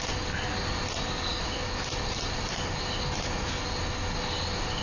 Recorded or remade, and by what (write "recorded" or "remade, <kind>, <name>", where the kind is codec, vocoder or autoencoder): recorded